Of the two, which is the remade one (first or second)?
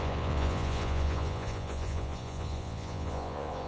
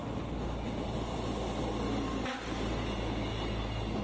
first